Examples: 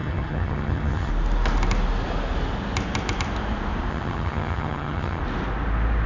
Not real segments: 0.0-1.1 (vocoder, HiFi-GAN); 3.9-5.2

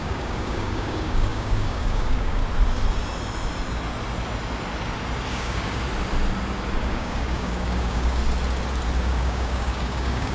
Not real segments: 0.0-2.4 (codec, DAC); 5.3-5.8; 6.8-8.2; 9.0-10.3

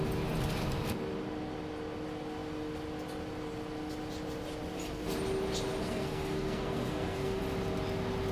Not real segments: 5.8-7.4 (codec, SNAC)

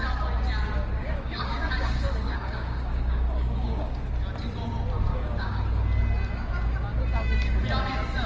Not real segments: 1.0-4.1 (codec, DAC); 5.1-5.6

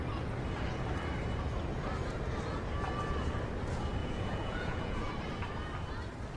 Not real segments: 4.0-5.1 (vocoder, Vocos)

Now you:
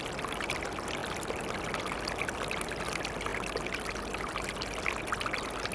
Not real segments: none

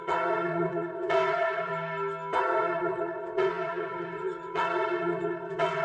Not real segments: 0.0-1.7 (vocoder, WaveNeXt); 2.4-5.8